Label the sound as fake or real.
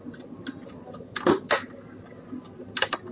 real